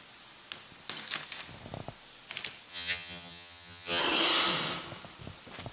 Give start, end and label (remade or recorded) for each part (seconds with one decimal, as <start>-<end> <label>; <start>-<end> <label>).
0.0-2.7 recorded; 2.7-4.0 remade; 4.0-5.7 recorded